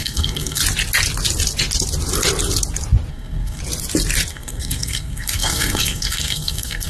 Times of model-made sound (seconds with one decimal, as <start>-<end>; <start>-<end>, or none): 0.0-0.6; 3.1-3.6; 4.3-6.9